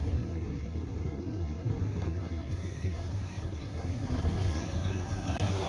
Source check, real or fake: fake